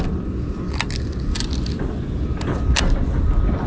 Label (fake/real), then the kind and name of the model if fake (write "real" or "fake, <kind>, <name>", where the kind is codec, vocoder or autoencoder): real